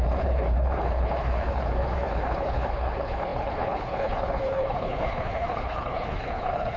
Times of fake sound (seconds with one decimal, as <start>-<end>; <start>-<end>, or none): 0.0-6.8